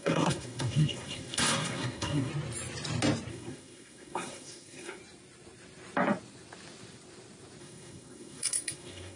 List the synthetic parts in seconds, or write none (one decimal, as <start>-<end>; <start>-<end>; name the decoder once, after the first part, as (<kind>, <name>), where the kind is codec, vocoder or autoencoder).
0.0-2.3 (codec, SNAC); 3.3-5.0; 7.6-9.2